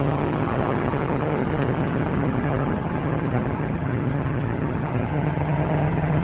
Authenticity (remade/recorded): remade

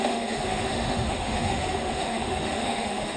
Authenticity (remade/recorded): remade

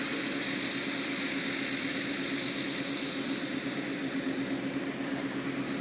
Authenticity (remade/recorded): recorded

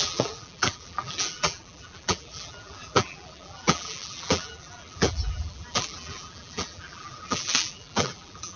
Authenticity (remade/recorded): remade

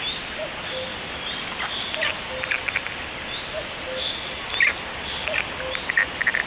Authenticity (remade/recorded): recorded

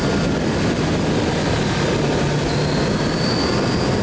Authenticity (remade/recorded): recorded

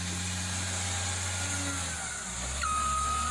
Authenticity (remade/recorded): recorded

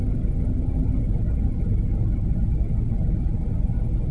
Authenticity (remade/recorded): recorded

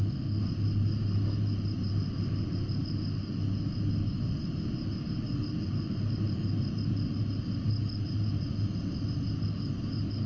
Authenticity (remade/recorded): recorded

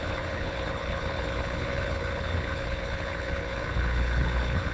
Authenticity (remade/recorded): remade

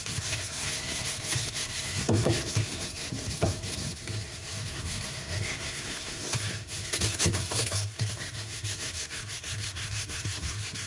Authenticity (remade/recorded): remade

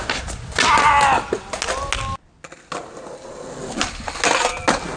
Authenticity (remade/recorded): recorded